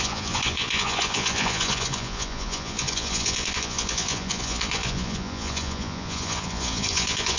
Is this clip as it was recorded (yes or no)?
no